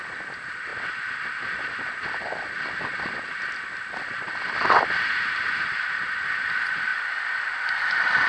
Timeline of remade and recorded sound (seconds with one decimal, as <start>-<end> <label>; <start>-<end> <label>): 0.0-8.3 recorded